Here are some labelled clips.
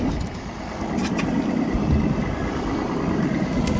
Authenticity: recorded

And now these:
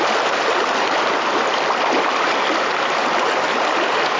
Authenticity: recorded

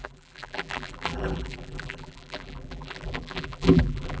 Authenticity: remade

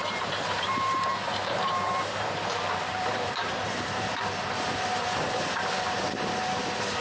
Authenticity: remade